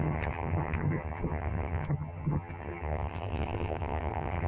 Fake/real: fake